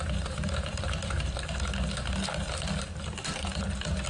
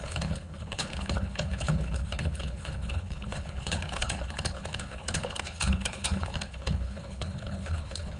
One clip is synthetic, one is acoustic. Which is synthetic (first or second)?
second